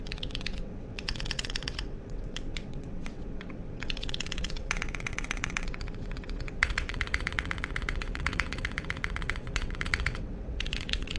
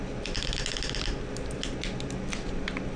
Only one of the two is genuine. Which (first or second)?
second